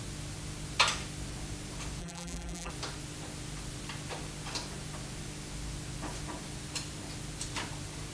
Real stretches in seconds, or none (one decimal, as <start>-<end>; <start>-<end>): 0.0-2.0; 2.7-8.1